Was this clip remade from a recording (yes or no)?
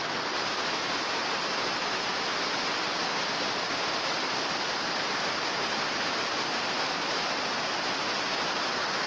no